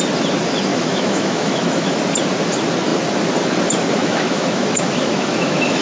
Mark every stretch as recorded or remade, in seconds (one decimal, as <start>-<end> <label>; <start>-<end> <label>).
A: 0.0-0.7 recorded; 0.7-2.0 remade; 2.0-4.0 recorded; 4.0-5.8 remade